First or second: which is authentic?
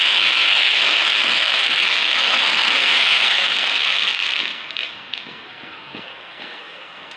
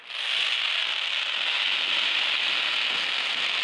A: second